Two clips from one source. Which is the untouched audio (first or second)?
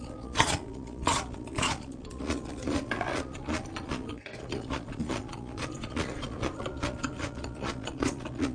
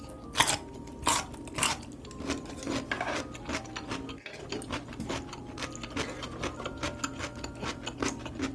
second